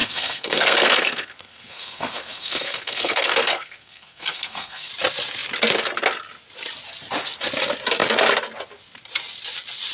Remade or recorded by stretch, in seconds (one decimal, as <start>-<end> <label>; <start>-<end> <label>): 0.0-4.9 remade; 4.9-9.9 recorded